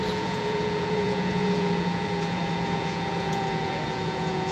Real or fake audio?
fake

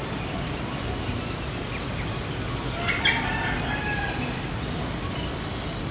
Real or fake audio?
real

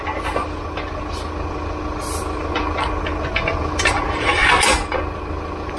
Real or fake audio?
real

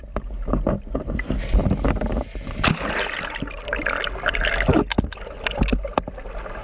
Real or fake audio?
real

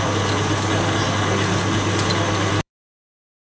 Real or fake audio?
real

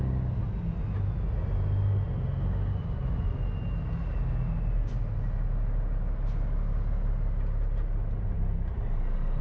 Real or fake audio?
real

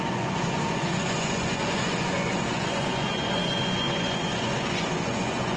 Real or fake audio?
fake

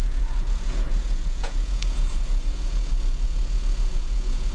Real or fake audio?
fake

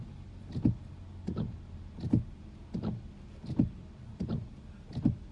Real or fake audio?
real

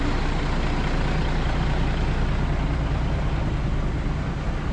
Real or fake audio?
real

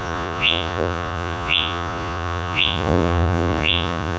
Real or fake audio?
fake